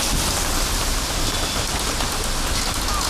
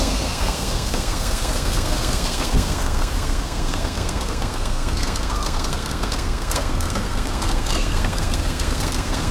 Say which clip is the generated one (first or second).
second